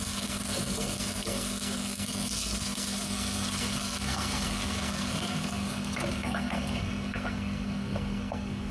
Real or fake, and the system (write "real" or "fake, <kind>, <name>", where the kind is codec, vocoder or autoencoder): fake, codec, SNAC